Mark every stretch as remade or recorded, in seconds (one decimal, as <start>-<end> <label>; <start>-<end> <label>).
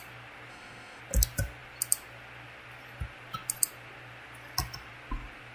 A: 0.0-0.5 recorded; 0.5-1.0 remade; 1.0-5.5 recorded